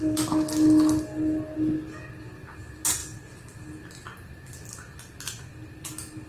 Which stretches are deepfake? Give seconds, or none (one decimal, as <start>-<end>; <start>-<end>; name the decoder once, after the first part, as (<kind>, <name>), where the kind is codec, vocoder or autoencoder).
none